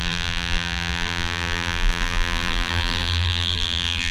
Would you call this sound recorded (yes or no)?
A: no